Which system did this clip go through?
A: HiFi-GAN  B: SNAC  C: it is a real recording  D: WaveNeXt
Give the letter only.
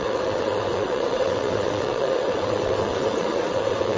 D